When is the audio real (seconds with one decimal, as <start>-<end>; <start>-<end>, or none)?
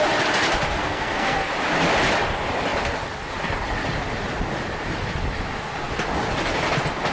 0.0-0.8; 1.5-7.1